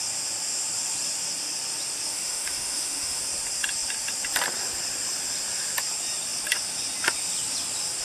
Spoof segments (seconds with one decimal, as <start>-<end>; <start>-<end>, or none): 2.1-3.2